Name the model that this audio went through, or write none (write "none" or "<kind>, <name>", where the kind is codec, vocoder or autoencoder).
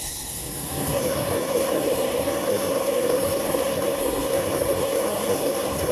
codec, SNAC